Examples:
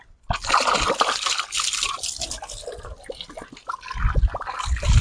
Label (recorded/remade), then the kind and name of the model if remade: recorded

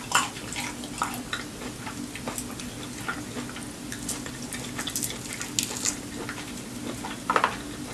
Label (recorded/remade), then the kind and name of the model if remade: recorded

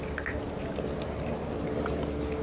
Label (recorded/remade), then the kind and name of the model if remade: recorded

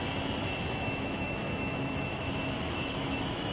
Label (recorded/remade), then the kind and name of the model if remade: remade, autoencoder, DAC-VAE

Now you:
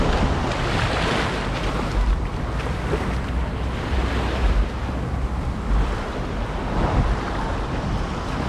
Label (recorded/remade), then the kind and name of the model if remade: recorded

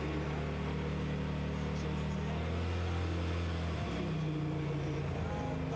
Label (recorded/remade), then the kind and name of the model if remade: recorded